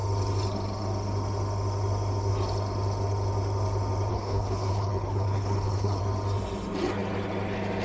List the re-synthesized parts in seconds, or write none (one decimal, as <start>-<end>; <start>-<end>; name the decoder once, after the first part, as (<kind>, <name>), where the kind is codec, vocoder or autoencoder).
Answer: 4.1-6.0 (codec, HILCodec)